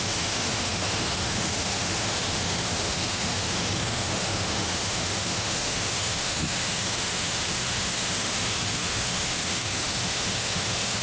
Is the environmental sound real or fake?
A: fake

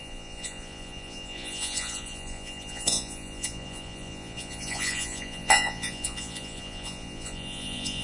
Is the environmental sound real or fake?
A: fake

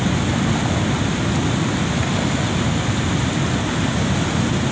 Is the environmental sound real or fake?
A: real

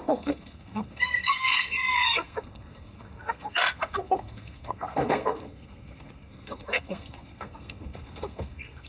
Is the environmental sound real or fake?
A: fake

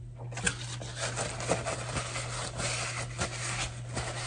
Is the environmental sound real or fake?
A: real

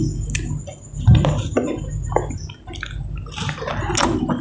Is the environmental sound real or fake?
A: real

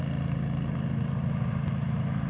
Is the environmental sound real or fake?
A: real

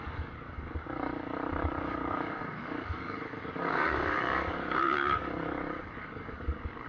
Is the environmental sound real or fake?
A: fake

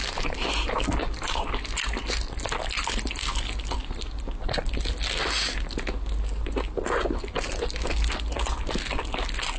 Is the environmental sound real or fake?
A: real